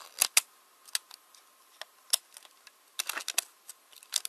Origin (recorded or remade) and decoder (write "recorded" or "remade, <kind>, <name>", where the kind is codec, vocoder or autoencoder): recorded